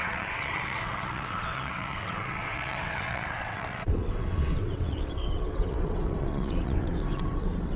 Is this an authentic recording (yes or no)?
no